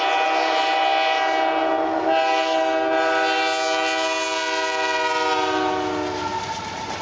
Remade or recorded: recorded